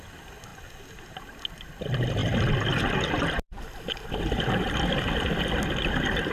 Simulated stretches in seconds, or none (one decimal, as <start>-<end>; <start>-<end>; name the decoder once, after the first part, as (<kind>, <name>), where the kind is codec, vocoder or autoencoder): 0.5-1.5 (vocoder, BigVGAN v2); 2.2-5.3